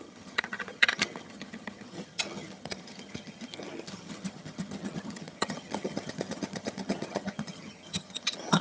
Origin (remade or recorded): remade